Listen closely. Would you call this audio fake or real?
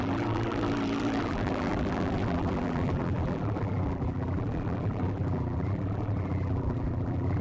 fake